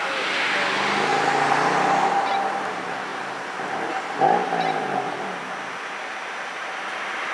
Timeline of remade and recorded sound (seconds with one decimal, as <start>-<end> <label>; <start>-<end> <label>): 0.0-7.3 recorded